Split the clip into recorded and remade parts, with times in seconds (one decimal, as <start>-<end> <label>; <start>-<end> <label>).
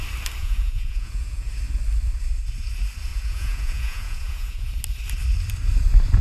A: 0.0-0.4 recorded; 0.4-1.5 remade; 1.5-3.1 recorded; 3.1-4.7 remade; 4.7-6.2 recorded